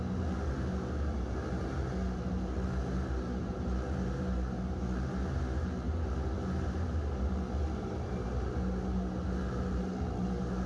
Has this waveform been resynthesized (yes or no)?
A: no